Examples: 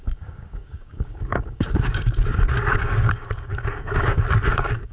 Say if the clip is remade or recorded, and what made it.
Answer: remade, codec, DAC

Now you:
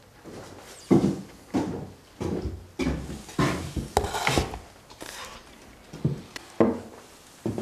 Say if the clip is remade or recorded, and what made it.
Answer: recorded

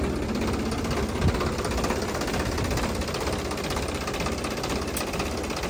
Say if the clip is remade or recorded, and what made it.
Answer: recorded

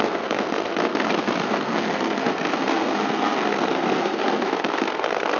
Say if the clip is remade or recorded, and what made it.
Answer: remade, codec, SNAC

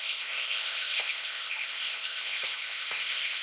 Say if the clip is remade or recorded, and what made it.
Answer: remade, codec, ZipCodec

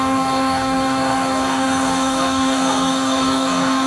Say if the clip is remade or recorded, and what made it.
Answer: remade, codec, DAC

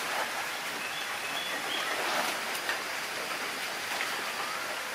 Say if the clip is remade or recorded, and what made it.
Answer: recorded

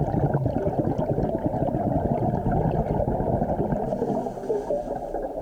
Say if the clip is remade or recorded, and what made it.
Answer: recorded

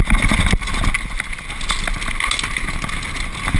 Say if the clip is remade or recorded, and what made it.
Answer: recorded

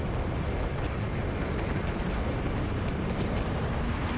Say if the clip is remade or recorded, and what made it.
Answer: recorded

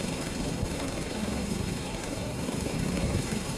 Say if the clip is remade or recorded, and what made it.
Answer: remade, codec, SNAC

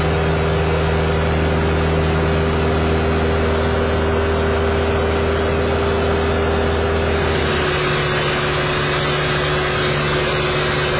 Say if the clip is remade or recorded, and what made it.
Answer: recorded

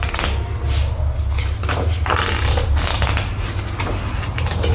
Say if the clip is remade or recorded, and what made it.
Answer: recorded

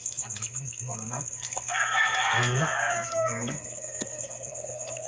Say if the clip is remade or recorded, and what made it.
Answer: remade, codec, SNAC